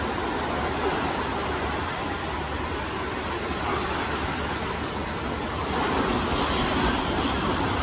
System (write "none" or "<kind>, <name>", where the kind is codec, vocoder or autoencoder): none